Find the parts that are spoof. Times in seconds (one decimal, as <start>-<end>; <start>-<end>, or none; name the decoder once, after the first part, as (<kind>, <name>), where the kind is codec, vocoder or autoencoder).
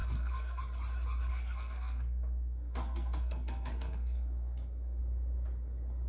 0.0-0.6 (codec, SNAC); 1.3-5.0